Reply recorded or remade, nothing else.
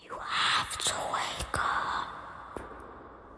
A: recorded